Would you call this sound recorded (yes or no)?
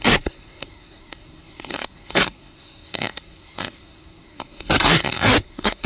no